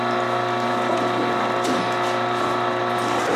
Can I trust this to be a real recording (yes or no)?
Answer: yes